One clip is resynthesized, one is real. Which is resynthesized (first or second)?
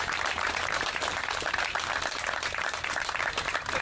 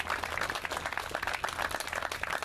first